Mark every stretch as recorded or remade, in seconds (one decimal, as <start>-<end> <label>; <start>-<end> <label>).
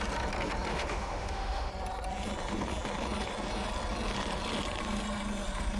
0.0-0.7 recorded; 0.7-1.7 remade; 1.7-5.8 recorded